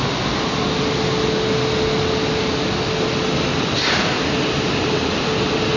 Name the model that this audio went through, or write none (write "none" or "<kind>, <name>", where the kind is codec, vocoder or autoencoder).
none